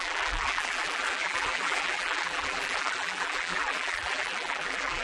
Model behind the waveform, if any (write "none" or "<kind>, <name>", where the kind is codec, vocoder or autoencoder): vocoder, BigVGAN v2